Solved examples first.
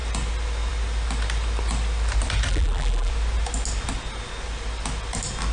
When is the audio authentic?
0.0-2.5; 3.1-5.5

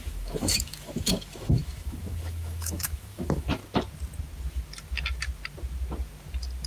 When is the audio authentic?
3.6-6.7

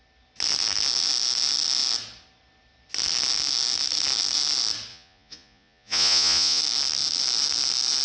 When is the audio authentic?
0.0-4.9; 6.6-8.0

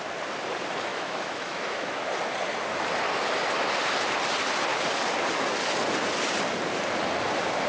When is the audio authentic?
0.0-0.9; 2.1-7.7